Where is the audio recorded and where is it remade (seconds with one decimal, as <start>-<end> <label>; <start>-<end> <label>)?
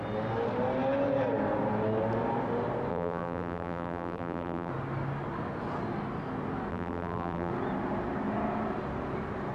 0.0-2.9 recorded; 2.9-4.7 remade; 4.7-6.7 recorded; 6.7-7.5 remade; 7.5-9.5 recorded